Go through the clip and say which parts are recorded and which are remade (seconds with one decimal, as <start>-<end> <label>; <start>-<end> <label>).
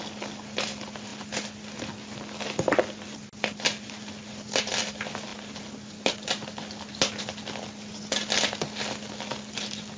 0.0-10.0 recorded